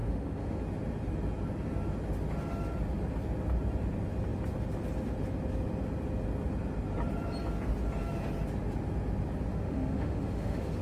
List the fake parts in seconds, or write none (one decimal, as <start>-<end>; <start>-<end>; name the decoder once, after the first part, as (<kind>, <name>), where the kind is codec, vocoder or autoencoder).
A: 0.0-0.6 (autoencoder, DAC-VAE); 9.5-10.8

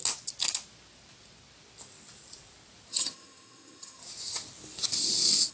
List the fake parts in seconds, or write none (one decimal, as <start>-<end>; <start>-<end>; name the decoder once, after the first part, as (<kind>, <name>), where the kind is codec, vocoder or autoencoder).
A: 2.9-4.0 (vocoder, HiFi-GAN)

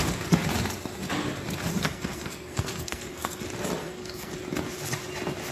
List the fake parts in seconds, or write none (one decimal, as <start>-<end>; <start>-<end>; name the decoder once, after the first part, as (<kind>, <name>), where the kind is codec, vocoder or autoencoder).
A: 1.7-3.4 (codec, SNAC); 3.8-4.3

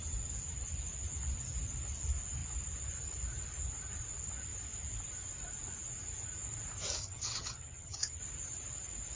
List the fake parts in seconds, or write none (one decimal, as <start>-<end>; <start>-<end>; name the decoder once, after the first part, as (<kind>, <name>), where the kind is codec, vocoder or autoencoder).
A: 7.0-8.2 (vocoder, HiFi-GAN)

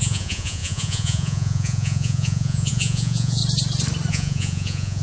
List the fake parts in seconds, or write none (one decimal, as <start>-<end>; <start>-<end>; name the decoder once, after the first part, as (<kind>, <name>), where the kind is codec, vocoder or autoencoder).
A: 0.0-3.4 (vocoder, Vocos); 4.1-5.0

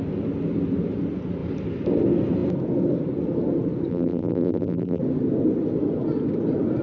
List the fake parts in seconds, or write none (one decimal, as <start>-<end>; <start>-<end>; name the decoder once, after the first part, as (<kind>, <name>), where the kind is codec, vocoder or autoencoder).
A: 3.9-5.0 (vocoder, BigVGAN v2)